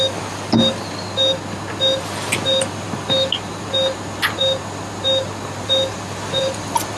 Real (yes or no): yes